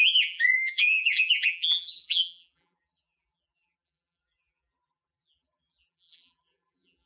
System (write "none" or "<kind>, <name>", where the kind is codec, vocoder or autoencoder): vocoder, BigVGAN v2